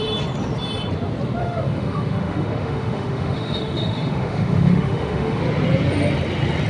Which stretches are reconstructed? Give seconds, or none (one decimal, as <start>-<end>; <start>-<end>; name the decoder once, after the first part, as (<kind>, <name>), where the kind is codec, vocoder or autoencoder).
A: 1.4-5.4 (autoencoder, DAC-VAE)